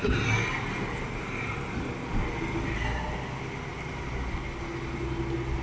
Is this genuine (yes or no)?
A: yes